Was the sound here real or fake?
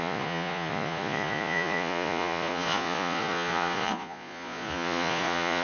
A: fake